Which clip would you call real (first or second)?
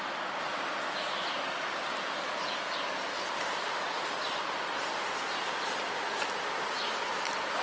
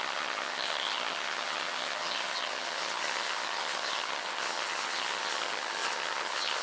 first